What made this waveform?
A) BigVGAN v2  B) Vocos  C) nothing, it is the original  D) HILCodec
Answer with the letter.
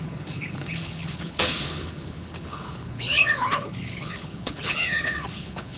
D